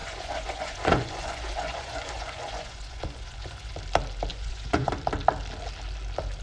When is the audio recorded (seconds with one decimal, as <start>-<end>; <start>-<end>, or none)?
3.7-4.3; 4.9-6.4